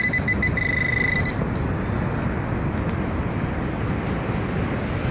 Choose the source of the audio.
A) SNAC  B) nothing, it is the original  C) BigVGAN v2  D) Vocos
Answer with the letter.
B